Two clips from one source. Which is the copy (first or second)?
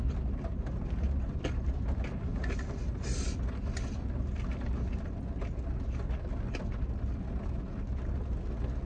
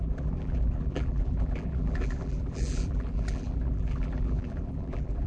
second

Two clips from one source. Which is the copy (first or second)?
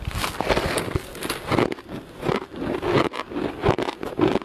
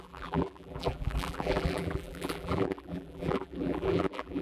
second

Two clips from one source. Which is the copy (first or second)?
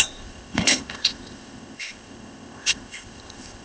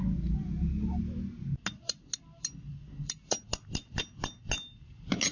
first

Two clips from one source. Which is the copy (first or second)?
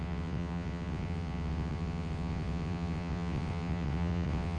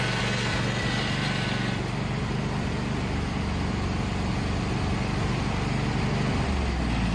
first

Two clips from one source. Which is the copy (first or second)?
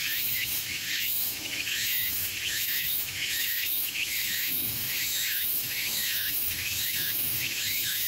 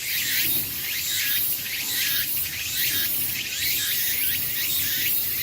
first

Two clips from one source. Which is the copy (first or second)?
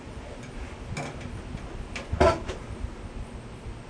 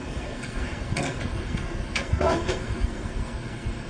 second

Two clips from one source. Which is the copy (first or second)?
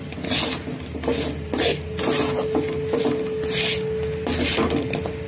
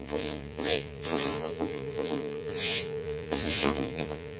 second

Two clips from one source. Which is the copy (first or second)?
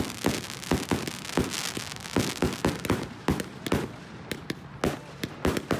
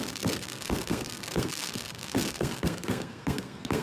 second